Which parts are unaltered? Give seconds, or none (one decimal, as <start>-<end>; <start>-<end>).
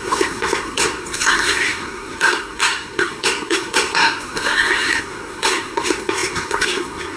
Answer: none